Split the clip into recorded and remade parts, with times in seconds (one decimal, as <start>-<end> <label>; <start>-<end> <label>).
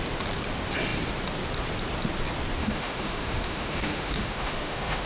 0.0-2.6 recorded; 2.6-5.1 remade